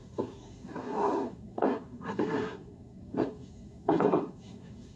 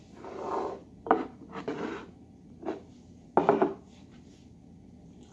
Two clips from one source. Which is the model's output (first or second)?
first